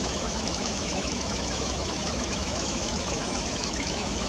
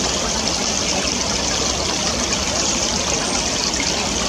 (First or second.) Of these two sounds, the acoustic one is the second